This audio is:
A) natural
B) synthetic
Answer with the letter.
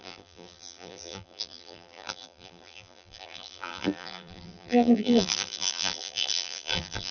B